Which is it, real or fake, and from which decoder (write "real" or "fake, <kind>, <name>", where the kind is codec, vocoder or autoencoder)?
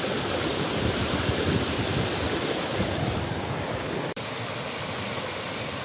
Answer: fake, vocoder, BigVGAN v2